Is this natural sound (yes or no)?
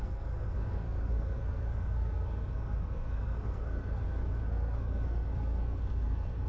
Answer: no